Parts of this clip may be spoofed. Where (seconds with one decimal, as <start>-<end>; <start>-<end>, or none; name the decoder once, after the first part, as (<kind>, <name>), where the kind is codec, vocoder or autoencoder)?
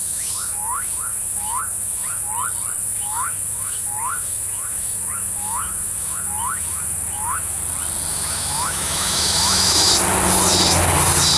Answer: 0.0-2.3 (autoencoder, DAC-VAE); 2.8-7.6; 8.1-9.9